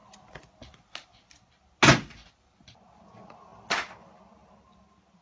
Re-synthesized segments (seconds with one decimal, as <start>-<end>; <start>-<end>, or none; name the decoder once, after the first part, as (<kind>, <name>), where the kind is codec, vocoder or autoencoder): none